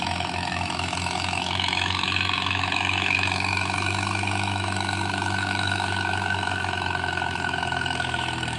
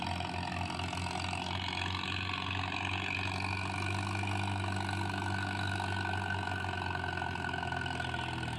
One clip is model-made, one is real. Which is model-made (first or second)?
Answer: first